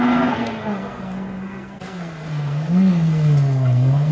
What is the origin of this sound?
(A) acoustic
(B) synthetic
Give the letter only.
B